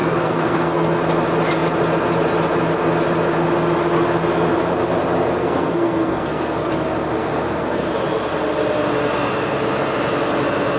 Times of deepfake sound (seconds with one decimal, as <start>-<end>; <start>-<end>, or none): 0.0-1.0; 5.4-6.7; 7.2-7.9